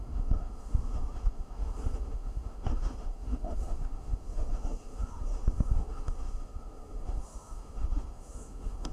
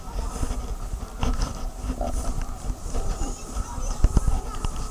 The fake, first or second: first